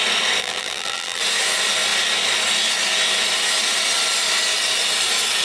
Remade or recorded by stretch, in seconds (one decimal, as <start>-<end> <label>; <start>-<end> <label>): 0.0-0.4 recorded; 0.4-1.2 remade; 1.2-5.4 recorded